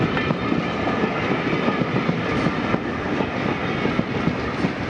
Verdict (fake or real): real